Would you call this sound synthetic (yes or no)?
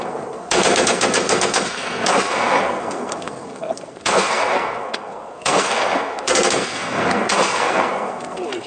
yes